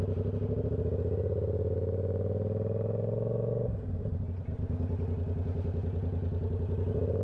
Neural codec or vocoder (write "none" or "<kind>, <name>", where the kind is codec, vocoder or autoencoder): none